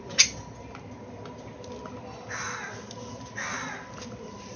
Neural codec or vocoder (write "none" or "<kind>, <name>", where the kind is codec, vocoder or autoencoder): none